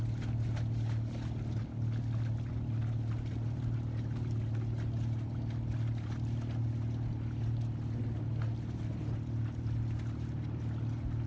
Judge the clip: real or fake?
real